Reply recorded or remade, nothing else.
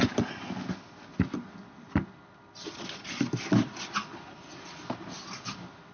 recorded